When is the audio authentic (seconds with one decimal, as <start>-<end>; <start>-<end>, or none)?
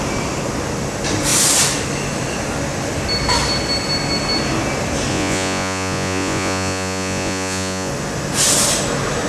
0.0-5.1; 7.9-9.3